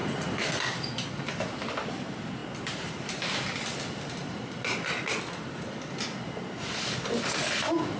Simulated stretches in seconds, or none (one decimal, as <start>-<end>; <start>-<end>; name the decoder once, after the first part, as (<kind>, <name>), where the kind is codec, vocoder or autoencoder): none